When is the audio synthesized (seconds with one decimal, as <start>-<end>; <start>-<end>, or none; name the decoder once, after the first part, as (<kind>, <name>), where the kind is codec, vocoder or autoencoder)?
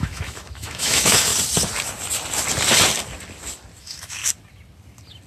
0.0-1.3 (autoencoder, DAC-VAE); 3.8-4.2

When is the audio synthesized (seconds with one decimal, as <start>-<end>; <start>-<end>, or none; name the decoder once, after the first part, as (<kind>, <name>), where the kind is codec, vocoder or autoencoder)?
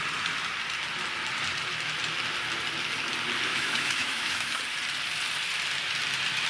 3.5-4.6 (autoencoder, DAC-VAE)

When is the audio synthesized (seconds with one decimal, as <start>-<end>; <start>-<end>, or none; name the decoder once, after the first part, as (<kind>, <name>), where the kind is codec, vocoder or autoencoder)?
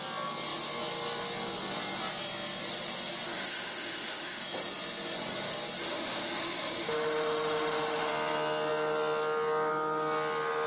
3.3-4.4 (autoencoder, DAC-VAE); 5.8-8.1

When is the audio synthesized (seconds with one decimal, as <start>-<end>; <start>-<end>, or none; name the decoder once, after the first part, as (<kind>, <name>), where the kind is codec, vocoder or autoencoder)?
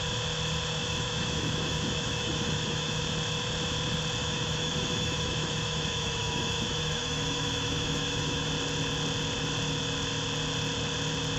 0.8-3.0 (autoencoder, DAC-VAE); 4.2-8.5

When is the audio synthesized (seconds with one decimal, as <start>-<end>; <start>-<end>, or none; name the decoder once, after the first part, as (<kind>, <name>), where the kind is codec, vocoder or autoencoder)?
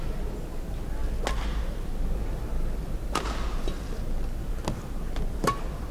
none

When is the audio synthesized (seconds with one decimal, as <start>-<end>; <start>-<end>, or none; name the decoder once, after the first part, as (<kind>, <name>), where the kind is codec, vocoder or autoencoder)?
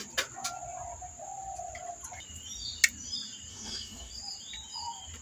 3.5-4.1 (autoencoder, DAC-VAE)